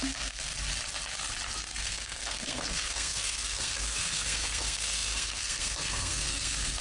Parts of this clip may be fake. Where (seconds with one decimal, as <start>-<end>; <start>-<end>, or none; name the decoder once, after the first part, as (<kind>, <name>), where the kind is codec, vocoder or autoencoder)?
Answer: 0.0-0.5 (codec, SNAC); 1.8-6.8